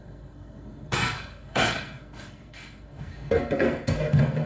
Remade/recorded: remade